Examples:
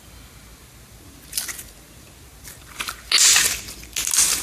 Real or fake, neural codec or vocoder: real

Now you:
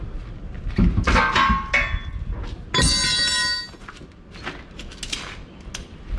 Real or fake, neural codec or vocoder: real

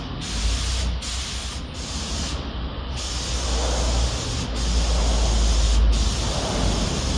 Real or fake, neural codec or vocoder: real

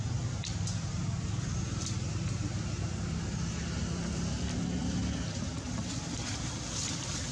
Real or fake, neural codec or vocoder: real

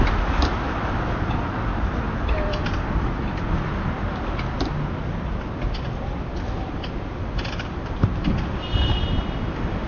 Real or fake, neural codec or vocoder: real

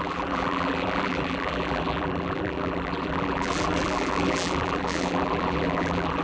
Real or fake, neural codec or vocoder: fake, vocoder, BigVGAN v2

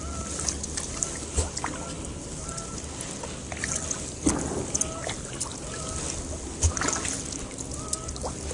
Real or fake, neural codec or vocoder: real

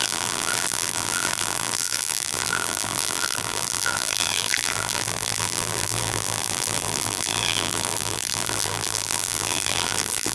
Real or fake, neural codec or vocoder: fake, vocoder, BigVGAN v2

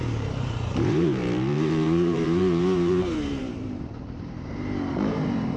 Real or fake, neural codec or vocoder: fake, vocoder, BigVGAN v2